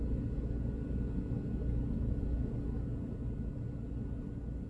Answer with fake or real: real